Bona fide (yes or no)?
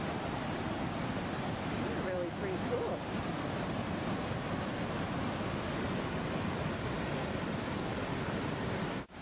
yes